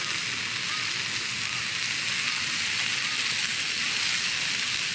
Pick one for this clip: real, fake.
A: real